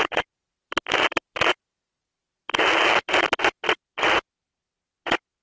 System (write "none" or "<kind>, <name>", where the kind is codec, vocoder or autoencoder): none